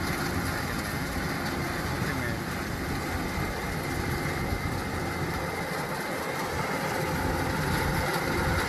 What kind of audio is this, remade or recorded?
recorded